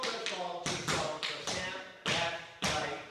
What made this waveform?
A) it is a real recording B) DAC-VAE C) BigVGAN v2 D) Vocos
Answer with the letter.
A